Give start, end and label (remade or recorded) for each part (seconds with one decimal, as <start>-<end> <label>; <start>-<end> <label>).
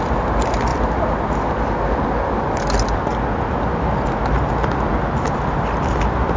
0.0-6.4 recorded